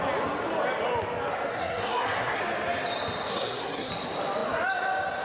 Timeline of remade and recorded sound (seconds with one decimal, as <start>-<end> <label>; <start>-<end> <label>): 0.0-1.5 recorded; 1.5-2.4 remade; 2.4-3.3 recorded; 3.3-3.9 remade; 3.9-5.2 recorded

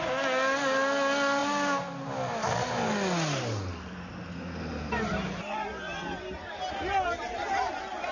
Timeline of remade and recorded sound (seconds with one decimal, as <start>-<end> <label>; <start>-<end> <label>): 0.0-8.1 recorded

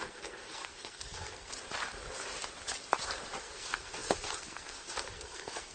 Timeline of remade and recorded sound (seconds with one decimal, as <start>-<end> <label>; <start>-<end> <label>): 0.0-1.5 remade; 1.5-3.4 recorded; 3.4-5.7 remade

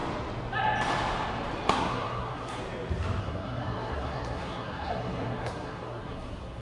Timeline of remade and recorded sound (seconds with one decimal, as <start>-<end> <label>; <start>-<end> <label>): 0.0-1.7 recorded; 1.7-2.6 remade; 2.6-3.2 recorded; 3.2-6.6 remade

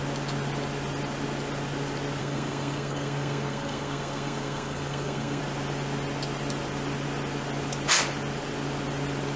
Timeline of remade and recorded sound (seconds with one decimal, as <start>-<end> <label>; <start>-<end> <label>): 0.0-2.2 recorded; 2.2-5.4 remade; 5.4-9.4 recorded

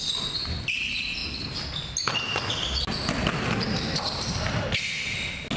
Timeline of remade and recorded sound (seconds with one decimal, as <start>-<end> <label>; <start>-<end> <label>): 0.0-5.6 recorded

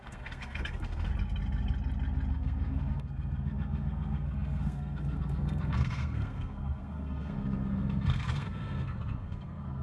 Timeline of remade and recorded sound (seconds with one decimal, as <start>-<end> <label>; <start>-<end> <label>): 0.0-1.1 remade; 1.1-2.3 recorded; 2.3-9.8 remade